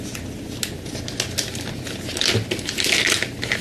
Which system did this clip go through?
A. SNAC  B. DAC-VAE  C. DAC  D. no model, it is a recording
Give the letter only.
D